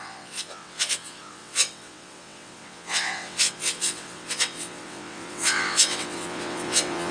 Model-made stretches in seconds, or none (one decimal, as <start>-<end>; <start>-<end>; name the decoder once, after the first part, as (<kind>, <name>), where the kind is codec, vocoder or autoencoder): 0.0-7.1 (vocoder, WaveNeXt)